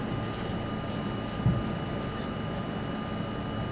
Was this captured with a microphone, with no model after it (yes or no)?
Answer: yes